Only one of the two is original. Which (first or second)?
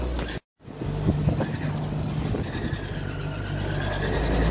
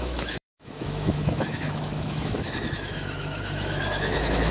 first